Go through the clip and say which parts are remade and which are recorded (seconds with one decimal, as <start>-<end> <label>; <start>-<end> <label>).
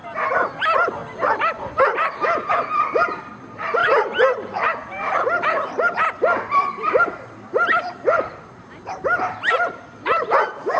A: 0.0-0.6 recorded; 0.6-1.0 remade; 1.0-2.9 recorded; 2.9-10.8 remade